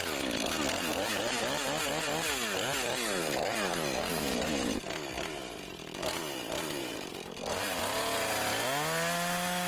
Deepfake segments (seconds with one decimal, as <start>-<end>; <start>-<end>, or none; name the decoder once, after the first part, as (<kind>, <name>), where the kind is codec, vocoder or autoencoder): 6.8-7.8 (vocoder, BigVGAN v2)